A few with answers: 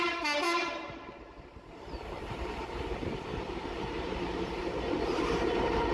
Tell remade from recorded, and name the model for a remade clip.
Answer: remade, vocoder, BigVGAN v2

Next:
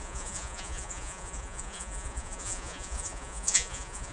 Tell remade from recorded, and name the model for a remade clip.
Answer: remade, vocoder, Vocos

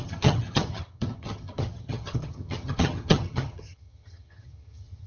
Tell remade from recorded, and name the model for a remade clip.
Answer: remade, vocoder, HiFi-GAN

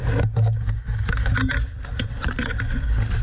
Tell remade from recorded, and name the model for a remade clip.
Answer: recorded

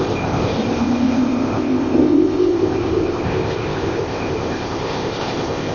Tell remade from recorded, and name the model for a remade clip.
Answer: remade, codec, ZipCodec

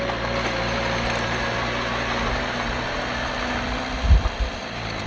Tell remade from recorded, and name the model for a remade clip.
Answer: recorded